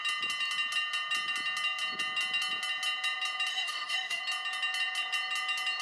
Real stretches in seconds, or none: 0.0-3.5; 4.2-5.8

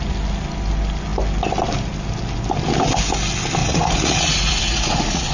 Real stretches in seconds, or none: 0.0-3.6

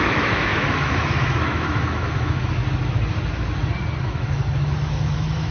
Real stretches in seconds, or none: 2.6-4.0

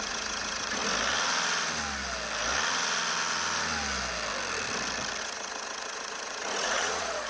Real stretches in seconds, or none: 0.8-5.2

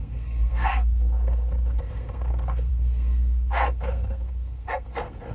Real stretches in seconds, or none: none